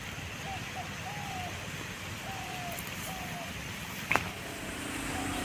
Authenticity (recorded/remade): recorded